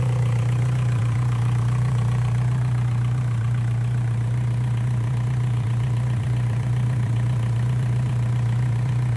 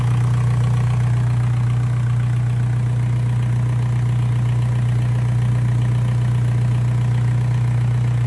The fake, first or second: first